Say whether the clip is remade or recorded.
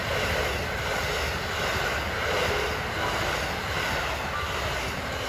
recorded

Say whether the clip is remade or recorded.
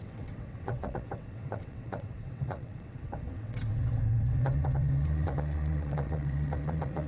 remade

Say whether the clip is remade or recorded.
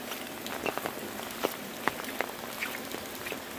recorded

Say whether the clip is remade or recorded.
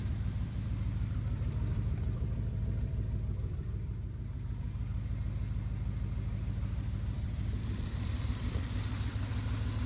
remade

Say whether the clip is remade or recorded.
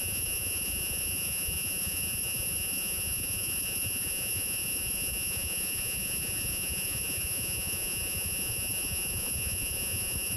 remade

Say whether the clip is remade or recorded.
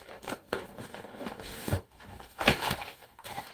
remade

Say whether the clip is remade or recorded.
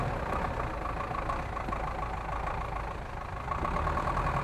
recorded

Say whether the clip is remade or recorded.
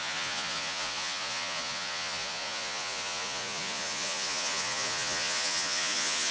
remade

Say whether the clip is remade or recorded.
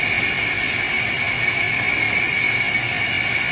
recorded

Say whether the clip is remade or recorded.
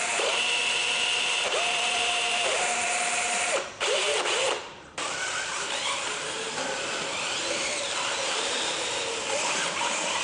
remade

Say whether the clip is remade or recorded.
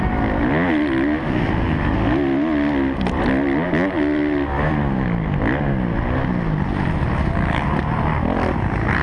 recorded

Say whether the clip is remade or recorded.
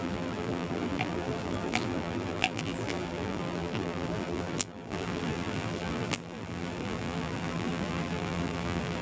remade